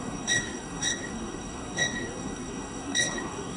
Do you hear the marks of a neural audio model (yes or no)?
yes